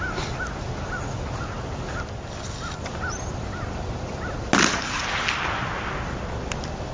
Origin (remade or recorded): recorded